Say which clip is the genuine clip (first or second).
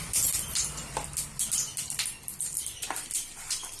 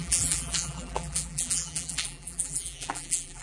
first